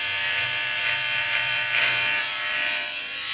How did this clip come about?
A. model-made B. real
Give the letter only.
A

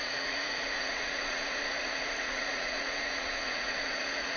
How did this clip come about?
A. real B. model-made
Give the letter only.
B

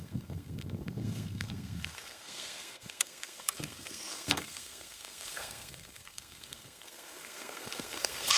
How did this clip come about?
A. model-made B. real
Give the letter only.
A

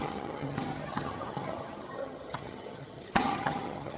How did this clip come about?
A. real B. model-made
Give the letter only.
B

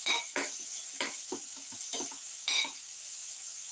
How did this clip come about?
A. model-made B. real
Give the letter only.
A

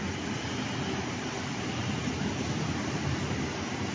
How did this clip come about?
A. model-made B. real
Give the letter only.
B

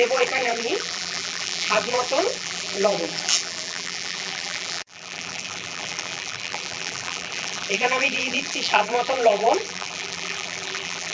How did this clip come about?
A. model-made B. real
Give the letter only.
A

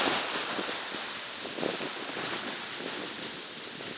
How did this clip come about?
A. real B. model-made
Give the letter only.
A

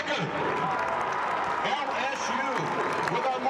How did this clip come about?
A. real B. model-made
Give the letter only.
B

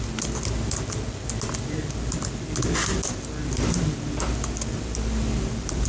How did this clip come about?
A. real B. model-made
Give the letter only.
A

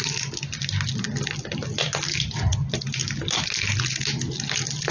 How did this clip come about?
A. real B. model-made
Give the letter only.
A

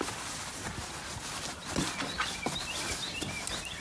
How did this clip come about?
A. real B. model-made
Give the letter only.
A